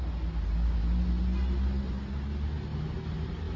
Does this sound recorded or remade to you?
recorded